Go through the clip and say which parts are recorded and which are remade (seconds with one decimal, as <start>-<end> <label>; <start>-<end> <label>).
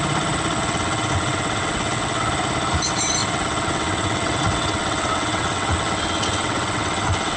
0.0-0.5 recorded; 0.5-2.3 remade; 2.3-3.2 recorded; 3.2-7.4 remade